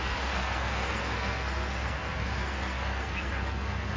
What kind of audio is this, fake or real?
fake